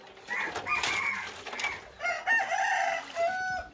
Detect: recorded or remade recorded